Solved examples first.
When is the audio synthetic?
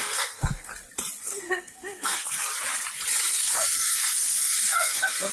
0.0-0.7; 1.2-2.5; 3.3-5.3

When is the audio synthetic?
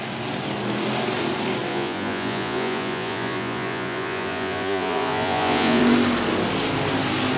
1.7-5.8